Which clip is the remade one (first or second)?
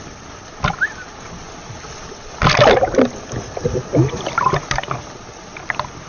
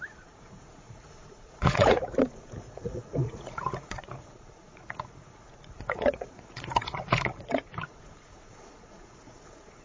second